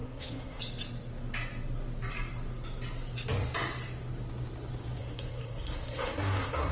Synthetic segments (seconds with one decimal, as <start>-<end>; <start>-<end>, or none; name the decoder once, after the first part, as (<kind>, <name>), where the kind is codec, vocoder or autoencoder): 0.0-0.6 (codec, SNAC); 5.0-6.7